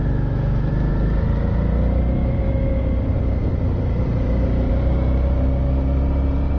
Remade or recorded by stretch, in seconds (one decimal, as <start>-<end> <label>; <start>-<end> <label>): 0.0-0.7 remade; 0.7-2.2 recorded; 2.2-2.9 remade; 2.9-6.6 recorded